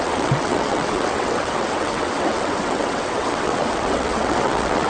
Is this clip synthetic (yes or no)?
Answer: yes